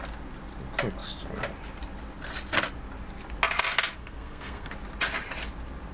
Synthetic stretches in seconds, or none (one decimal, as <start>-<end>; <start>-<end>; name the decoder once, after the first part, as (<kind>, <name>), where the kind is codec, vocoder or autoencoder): 4.0-4.7 (codec, SNAC)